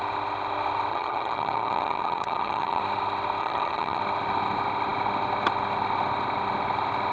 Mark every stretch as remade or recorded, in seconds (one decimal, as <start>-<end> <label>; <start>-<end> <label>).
0.0-0.9 recorded; 0.9-2.8 remade; 2.8-3.4 recorded; 3.4-4.0 remade; 4.0-7.1 recorded